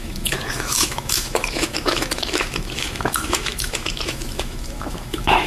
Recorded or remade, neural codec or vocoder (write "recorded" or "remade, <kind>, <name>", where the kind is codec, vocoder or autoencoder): remade, autoencoder, DAC-VAE